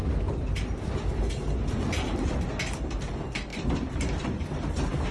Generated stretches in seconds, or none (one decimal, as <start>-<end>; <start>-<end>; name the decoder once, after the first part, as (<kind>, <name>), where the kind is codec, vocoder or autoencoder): 3.5-5.1 (vocoder, BigVGAN v2)